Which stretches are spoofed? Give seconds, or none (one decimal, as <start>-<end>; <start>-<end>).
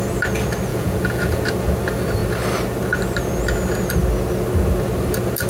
0.7-1.4